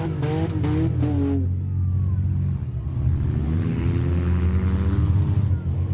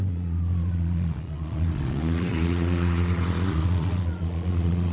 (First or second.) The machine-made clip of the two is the second